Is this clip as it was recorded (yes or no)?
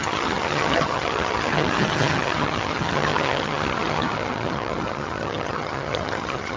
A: no